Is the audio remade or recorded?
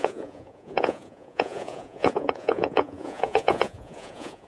remade